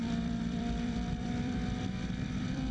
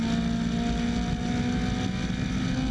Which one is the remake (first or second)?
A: first